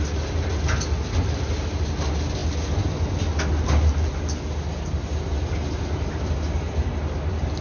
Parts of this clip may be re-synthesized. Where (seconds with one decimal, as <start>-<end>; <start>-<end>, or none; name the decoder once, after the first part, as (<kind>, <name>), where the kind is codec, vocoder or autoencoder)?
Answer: none